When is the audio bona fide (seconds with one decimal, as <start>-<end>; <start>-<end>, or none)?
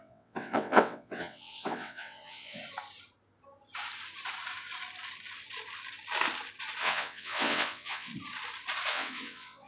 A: 2.6-6.8; 8.1-8.9